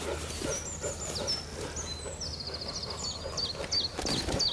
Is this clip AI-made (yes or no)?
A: no